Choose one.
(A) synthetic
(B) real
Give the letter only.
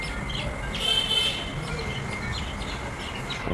B